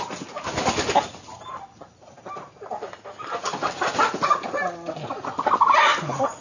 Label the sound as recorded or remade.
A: recorded